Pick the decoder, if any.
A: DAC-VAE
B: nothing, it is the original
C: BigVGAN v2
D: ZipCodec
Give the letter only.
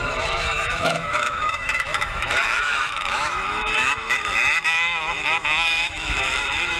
A